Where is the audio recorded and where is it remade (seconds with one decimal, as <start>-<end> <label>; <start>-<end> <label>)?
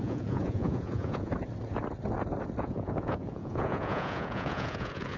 0.0-1.3 remade; 1.3-2.6 recorded; 2.6-5.2 remade